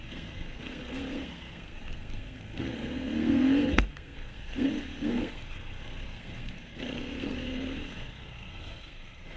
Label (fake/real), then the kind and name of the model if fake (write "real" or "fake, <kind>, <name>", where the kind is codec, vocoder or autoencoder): fake, codec, SNAC